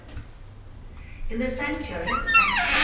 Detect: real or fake real